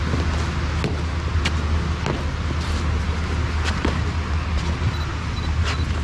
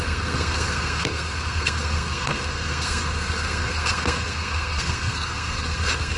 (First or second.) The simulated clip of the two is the second